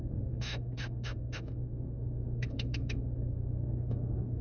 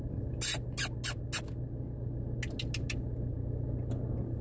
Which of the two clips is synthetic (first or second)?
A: first